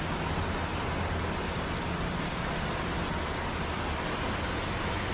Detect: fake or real real